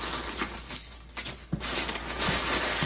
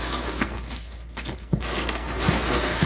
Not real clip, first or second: second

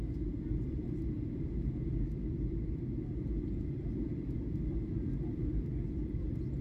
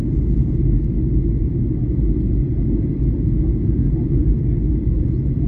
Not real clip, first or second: first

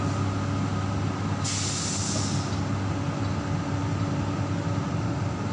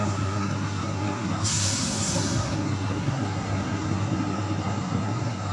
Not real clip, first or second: second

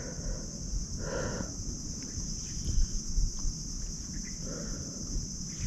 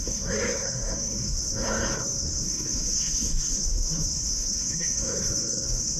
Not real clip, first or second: second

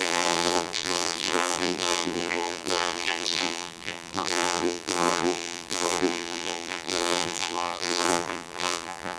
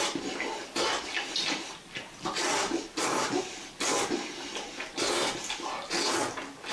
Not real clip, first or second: first